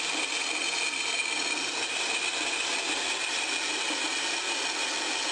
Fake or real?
real